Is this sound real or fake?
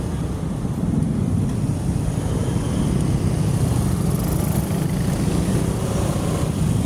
real